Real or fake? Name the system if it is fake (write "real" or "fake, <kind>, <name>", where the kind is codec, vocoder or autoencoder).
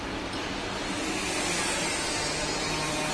real